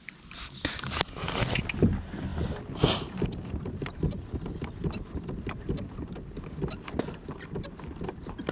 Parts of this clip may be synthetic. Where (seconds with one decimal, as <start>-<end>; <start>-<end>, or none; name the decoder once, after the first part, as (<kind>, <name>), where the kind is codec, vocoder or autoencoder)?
none